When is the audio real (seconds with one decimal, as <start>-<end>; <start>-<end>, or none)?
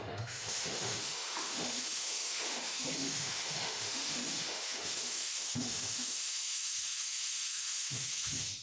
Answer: none